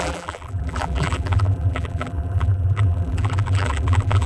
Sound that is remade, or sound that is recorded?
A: remade